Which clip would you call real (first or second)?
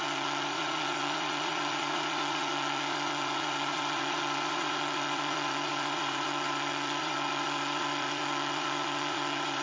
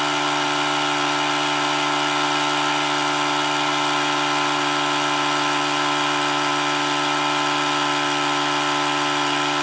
second